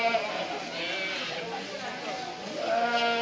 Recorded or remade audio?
recorded